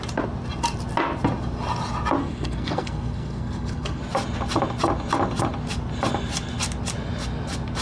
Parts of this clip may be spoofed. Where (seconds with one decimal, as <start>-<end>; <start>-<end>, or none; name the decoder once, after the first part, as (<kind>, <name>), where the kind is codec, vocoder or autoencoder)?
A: 2.2-4.0 (codec, SNAC)